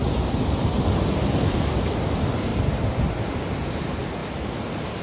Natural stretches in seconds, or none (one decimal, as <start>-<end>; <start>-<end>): 0.0-2.5; 3.6-5.0